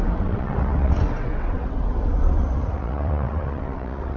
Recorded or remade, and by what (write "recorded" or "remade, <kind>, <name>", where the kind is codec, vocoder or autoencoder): remade, vocoder, WaveNeXt